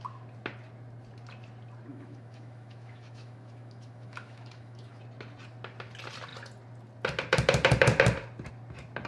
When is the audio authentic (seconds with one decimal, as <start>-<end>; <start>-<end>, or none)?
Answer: 0.0-1.9; 5.0-9.1